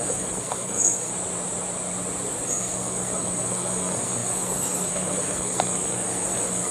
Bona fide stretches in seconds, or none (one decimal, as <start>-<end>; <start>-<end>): 1.1-2.5